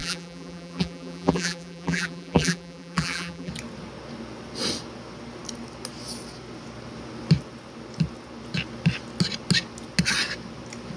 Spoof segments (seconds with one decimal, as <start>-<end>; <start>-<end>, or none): 0.0-3.5